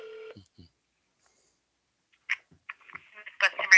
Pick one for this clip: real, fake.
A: real